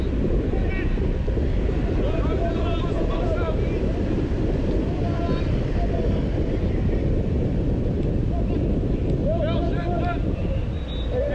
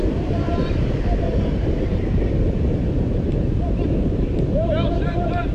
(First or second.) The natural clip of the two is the first